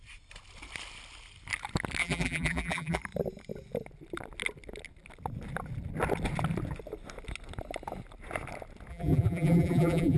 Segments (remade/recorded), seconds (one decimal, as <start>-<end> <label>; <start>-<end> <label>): 0.0-2.0 recorded; 2.0-3.0 remade; 3.0-8.9 recorded; 8.9-10.2 remade